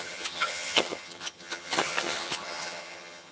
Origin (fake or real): fake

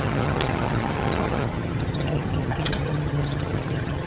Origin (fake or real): fake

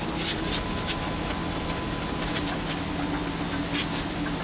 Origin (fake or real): real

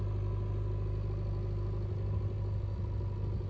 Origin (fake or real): real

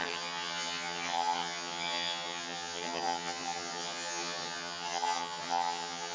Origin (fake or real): fake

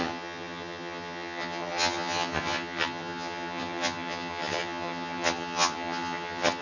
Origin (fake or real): fake